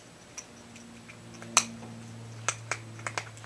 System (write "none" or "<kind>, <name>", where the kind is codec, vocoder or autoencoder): none